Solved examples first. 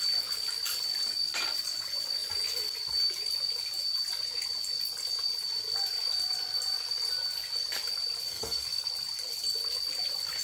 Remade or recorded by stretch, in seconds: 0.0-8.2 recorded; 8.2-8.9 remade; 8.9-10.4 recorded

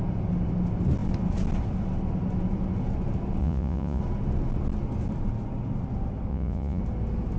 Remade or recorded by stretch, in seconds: 0.0-3.4 recorded; 3.4-4.0 remade; 4.0-6.3 recorded; 6.3-6.8 remade; 6.8-7.4 recorded

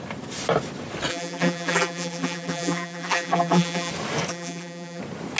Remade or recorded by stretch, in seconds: 0.0-1.1 recorded; 1.1-3.9 remade; 3.9-4.3 recorded; 4.3-5.0 remade; 5.0-5.4 recorded

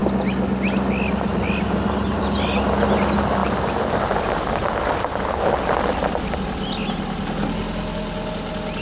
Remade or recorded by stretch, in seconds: 0.0-3.4 recorded; 3.4-6.3 remade; 6.3-8.8 recorded

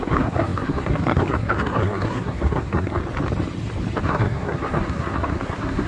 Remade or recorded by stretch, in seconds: 0.0-3.0 remade; 3.0-4.0 recorded; 4.0-5.9 remade